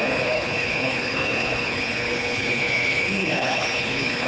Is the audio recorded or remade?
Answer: remade